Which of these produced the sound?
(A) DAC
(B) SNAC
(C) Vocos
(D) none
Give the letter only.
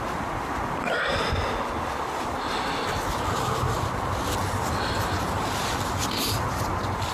D